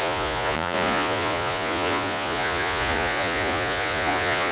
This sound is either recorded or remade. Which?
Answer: remade